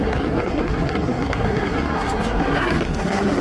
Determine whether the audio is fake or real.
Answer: fake